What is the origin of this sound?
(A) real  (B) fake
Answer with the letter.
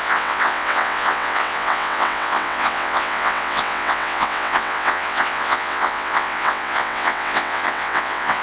B